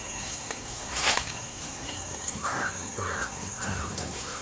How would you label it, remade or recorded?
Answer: remade